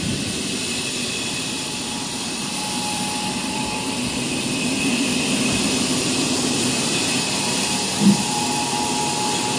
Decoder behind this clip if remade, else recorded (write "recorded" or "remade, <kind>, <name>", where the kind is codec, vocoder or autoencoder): remade, vocoder, BigVGAN v2